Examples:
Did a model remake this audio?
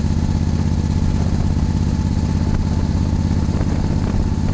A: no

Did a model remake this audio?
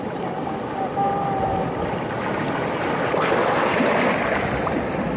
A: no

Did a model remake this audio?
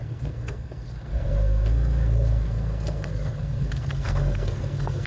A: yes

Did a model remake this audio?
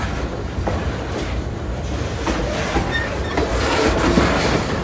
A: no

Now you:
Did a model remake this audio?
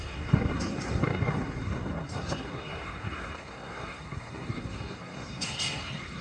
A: yes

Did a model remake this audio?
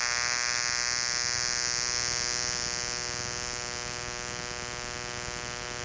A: no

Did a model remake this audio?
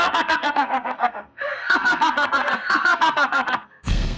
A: yes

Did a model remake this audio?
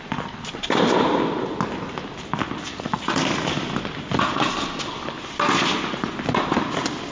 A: no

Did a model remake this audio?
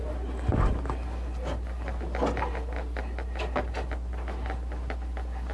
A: no